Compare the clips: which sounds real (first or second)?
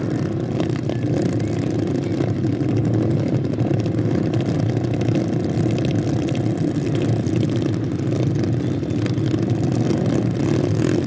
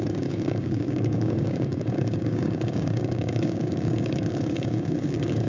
first